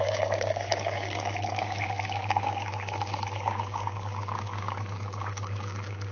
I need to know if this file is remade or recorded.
remade